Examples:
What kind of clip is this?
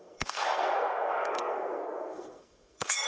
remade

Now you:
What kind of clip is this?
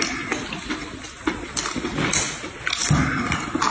recorded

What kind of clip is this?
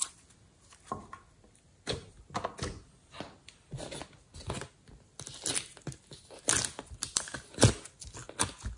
recorded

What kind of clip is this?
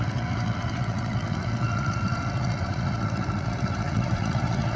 remade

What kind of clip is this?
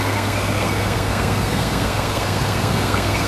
remade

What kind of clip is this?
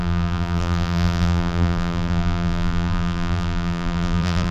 remade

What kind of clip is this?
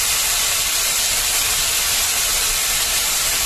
remade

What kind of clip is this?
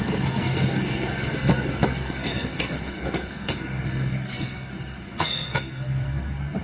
remade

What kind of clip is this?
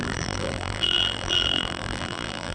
remade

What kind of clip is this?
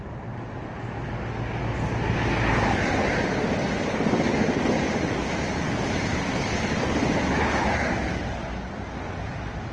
recorded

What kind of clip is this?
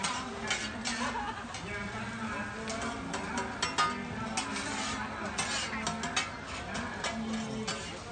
recorded